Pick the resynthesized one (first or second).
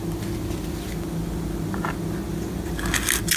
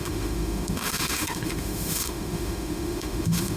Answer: second